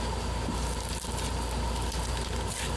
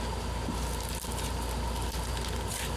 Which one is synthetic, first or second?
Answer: first